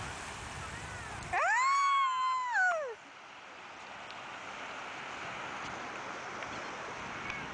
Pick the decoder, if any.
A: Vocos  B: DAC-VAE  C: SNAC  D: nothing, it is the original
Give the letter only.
D